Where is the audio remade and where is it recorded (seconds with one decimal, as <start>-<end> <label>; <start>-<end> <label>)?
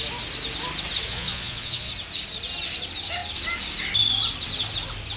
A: 0.0-1.1 recorded; 1.1-1.9 remade; 1.9-5.2 recorded